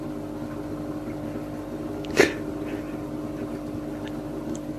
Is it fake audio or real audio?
fake